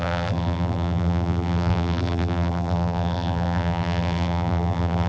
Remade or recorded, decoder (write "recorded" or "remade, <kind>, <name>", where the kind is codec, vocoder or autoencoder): remade, vocoder, BigVGAN v2